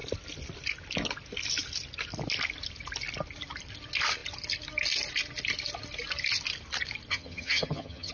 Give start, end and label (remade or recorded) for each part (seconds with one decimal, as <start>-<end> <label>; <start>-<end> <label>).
0.0-7.1 recorded; 7.1-8.1 remade